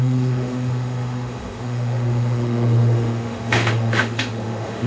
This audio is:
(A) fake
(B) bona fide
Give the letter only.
A